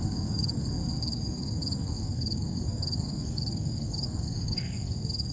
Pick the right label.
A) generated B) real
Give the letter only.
A